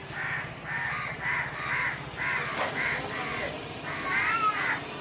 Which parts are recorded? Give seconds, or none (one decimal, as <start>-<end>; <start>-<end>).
0.0-5.0